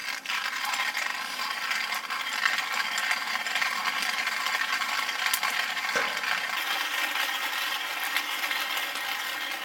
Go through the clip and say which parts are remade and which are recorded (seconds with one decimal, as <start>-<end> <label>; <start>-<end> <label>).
0.0-9.6 recorded